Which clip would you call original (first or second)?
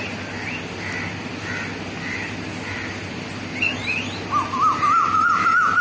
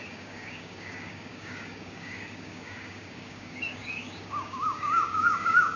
first